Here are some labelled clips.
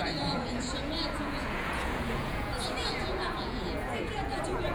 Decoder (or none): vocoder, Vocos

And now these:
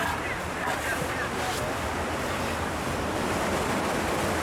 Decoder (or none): none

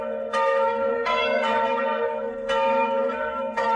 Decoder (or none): codec, SNAC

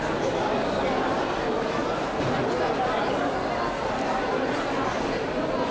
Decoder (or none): none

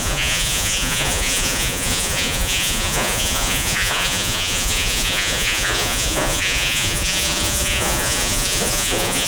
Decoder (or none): vocoder, Vocos